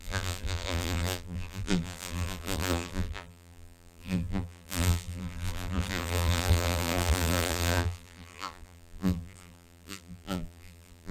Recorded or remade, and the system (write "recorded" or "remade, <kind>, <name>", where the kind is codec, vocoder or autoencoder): remade, vocoder, BigVGAN v2